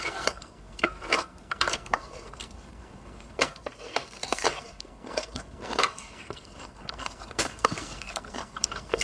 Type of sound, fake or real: fake